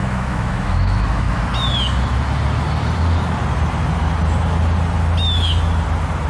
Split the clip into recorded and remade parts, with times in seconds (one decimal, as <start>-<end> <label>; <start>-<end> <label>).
0.0-1.4 remade; 1.4-6.3 recorded